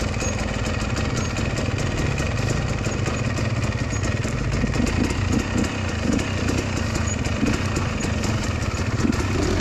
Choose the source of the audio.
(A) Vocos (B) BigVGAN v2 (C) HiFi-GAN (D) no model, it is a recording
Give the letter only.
D